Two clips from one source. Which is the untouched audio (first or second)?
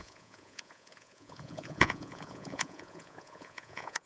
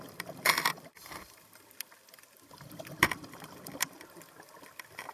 second